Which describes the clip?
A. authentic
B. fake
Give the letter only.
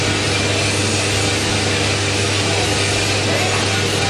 A